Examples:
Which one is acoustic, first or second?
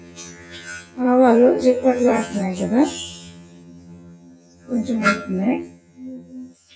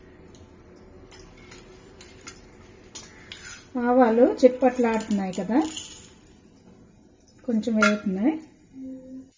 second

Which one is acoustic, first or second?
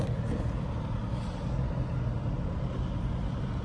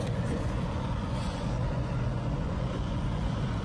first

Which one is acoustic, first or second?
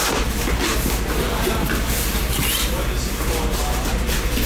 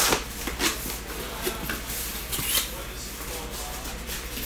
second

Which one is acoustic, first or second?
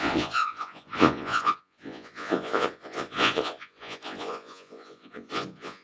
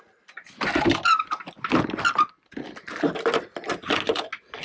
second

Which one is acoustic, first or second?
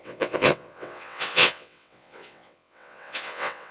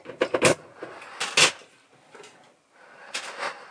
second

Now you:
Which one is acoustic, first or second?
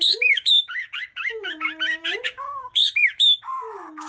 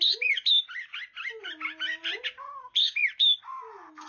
second